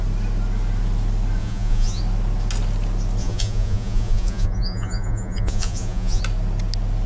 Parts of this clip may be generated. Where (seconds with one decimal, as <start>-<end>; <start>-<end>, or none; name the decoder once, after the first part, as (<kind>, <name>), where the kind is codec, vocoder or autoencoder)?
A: 1.4-2.0 (vocoder, Vocos); 3.2-6.2